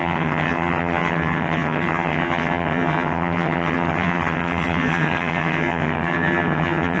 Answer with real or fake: fake